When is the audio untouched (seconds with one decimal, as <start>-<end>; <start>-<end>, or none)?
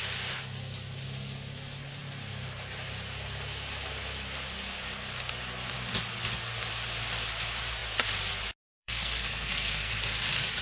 0.0-8.8; 9.9-10.6